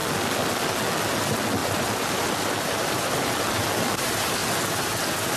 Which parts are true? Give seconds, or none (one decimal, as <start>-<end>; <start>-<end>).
0.0-1.6; 3.3-5.4